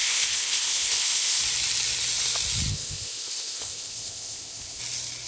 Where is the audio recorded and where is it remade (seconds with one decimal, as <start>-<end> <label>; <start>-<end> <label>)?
0.0-1.4 remade; 1.4-2.7 recorded; 2.7-4.8 remade; 4.8-5.3 recorded